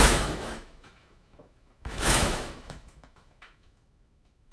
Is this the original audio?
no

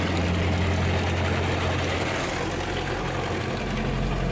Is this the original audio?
yes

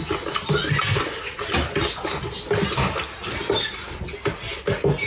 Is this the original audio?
yes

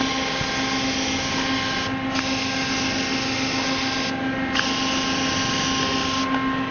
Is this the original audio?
yes